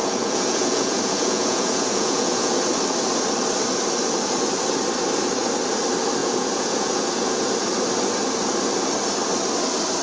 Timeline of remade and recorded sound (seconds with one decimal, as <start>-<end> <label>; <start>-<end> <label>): 0.0-2.6 remade; 2.6-6.2 recorded; 6.2-7.5 remade; 7.5-10.0 recorded